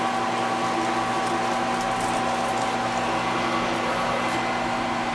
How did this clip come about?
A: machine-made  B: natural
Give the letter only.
B